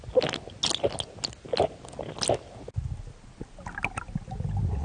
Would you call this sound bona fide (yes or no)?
yes